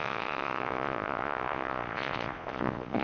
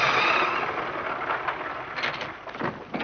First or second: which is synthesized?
first